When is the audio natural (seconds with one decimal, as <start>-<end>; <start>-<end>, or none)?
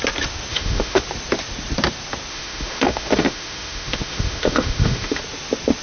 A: 0.0-0.5; 1.0-2.3; 5.2-5.8